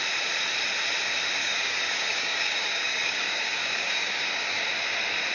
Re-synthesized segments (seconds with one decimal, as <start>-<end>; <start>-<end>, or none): 1.4-4.6